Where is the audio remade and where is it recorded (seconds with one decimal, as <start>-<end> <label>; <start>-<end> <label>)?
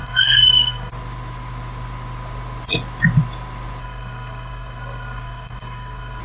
0.0-0.9 remade; 0.9-3.8 recorded; 3.8-6.2 remade